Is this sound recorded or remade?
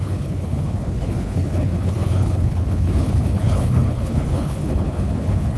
remade